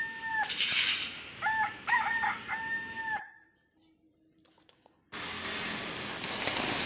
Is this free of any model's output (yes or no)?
yes